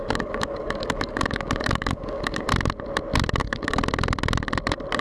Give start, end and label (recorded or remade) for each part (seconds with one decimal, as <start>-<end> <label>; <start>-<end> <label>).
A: 0.0-2.5 remade; 2.5-3.4 recorded; 3.4-3.8 remade; 3.8-5.0 recorded